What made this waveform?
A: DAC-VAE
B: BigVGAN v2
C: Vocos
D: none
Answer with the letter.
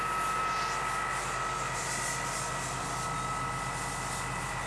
D